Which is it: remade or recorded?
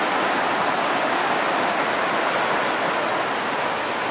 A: recorded